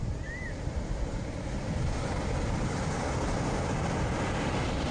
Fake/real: real